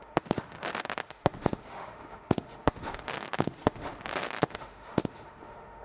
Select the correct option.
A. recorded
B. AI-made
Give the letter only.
B